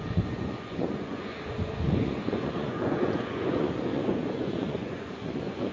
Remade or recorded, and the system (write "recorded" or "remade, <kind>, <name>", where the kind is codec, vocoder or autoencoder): remade, vocoder, Vocos